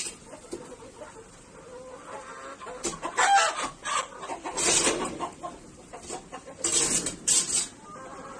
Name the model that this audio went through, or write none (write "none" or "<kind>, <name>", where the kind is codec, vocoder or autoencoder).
none